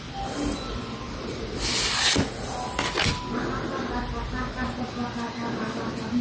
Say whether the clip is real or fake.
real